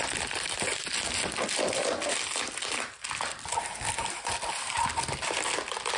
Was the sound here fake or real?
real